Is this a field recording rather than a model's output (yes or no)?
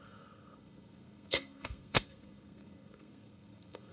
no